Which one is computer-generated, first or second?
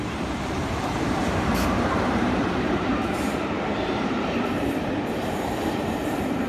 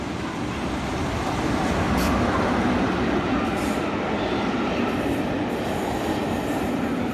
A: first